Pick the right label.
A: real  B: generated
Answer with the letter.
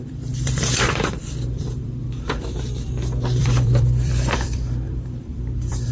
B